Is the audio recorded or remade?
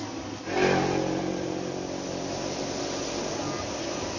recorded